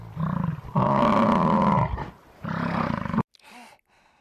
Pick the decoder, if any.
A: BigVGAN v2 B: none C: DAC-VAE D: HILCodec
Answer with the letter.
B